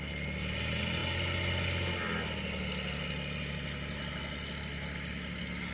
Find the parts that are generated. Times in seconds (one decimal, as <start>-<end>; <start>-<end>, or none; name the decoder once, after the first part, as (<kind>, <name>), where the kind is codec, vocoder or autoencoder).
none